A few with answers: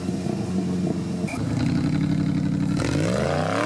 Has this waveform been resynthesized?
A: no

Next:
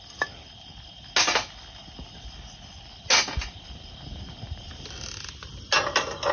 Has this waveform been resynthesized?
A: no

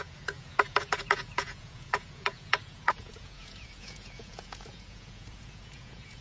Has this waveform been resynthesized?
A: yes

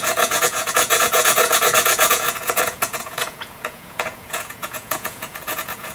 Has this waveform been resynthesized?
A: yes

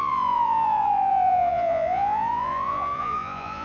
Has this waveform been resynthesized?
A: yes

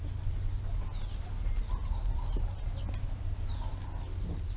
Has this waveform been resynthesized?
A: no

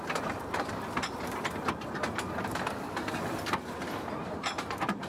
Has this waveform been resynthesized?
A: no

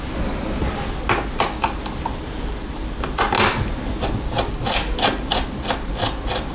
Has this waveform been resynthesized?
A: no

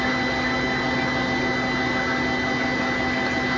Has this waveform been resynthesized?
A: no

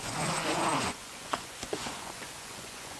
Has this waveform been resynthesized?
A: yes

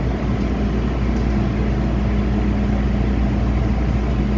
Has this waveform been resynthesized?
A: no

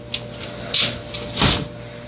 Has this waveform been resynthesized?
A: no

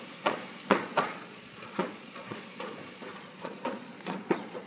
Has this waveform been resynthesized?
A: yes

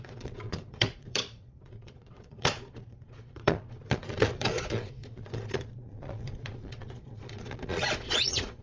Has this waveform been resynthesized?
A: yes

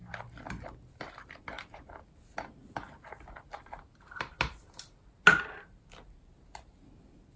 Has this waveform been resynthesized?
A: no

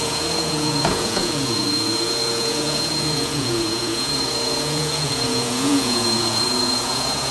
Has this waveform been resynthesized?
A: yes